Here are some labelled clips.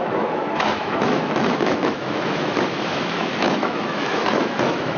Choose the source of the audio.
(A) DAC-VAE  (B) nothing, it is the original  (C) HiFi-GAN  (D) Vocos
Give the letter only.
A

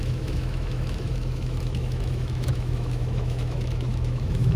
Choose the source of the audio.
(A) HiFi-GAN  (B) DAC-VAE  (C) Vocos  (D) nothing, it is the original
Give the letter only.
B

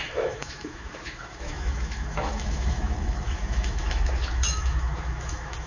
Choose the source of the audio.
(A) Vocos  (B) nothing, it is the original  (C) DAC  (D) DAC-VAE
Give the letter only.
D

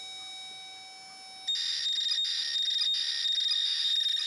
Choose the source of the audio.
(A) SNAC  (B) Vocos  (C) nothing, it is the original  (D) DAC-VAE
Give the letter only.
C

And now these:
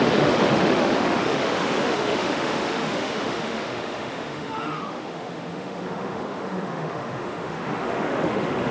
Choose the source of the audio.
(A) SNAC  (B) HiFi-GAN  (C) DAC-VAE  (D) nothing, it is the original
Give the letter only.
C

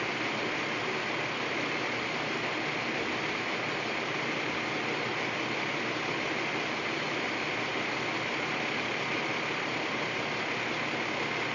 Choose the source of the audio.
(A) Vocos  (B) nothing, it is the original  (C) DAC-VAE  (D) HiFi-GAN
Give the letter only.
B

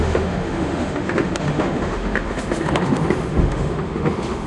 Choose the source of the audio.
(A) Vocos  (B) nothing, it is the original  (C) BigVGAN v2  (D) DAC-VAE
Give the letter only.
D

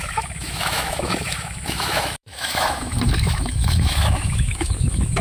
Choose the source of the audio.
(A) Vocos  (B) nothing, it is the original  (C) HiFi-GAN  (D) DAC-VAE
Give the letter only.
D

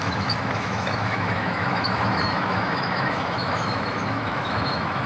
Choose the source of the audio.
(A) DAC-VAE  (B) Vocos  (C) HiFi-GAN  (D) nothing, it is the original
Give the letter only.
A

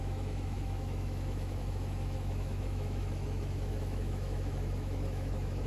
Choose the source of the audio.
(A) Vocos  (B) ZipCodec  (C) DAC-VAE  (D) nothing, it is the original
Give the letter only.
C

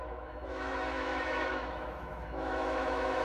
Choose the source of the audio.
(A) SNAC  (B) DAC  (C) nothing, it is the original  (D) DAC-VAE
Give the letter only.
D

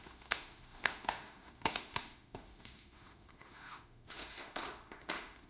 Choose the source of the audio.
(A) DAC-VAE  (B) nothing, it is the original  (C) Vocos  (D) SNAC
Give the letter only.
A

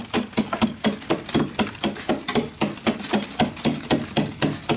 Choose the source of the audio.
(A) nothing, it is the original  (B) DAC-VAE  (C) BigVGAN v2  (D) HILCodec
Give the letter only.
A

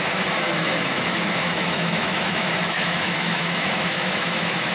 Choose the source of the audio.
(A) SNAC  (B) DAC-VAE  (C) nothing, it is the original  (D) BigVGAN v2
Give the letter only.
B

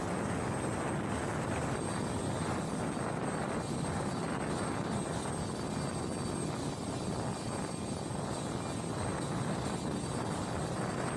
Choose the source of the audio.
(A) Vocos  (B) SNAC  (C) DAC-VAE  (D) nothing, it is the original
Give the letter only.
D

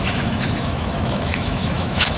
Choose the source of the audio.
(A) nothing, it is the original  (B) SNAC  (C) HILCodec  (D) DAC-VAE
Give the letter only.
D